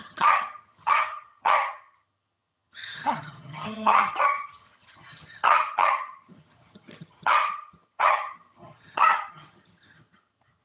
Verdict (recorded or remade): remade